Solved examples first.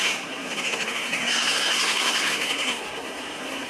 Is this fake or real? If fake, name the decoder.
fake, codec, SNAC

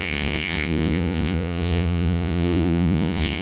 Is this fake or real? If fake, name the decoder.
fake, vocoder, Vocos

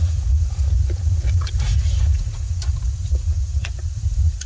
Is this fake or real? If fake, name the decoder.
fake, vocoder, Vocos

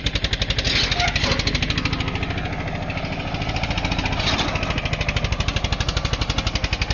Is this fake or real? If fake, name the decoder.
real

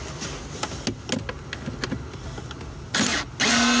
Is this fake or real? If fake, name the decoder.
real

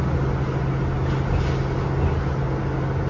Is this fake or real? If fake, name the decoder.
real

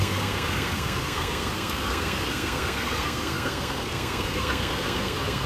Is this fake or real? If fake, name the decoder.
fake, codec, SNAC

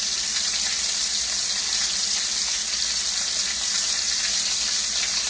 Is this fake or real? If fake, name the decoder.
real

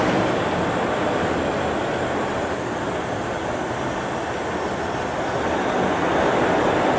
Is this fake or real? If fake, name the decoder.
real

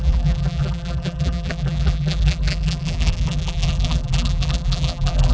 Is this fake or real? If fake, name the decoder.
fake, vocoder, BigVGAN v2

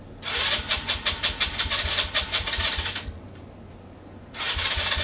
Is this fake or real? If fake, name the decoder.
real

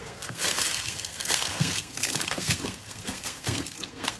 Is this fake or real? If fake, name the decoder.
fake, codec, SNAC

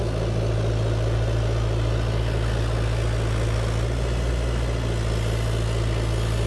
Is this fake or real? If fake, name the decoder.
real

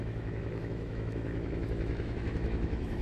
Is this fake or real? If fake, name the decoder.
fake, autoencoder, DAC-VAE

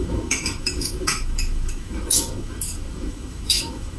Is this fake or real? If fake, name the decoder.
fake, autoencoder, DAC-VAE